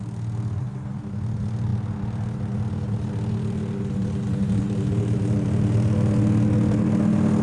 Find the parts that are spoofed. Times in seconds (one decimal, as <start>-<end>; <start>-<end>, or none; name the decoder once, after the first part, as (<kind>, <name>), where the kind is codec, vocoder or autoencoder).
none